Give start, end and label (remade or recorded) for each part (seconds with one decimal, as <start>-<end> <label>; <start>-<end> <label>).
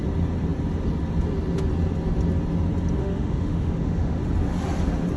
0.0-3.0 recorded; 3.0-4.2 remade; 4.2-5.2 recorded